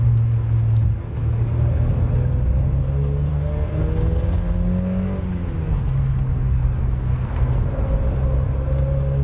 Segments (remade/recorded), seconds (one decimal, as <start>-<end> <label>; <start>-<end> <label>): 0.0-3.3 recorded; 3.3-3.8 remade; 3.8-5.6 recorded; 5.6-7.9 remade; 7.9-9.2 recorded